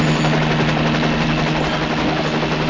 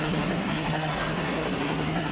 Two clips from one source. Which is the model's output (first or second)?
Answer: second